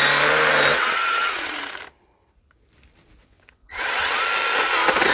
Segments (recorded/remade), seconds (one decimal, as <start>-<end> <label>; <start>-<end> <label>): 0.0-0.7 recorded; 0.7-1.7 remade; 1.7-3.2 recorded; 3.2-4.2 remade; 4.2-5.1 recorded